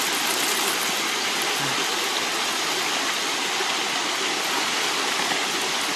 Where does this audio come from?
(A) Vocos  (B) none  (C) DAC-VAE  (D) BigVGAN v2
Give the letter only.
B